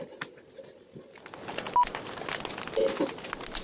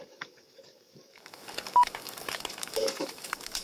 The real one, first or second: first